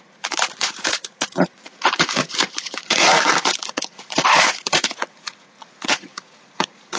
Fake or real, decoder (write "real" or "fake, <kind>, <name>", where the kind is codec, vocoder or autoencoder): fake, vocoder, Vocos